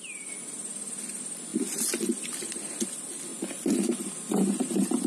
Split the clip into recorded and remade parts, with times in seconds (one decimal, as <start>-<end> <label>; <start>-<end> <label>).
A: 0.0-5.1 recorded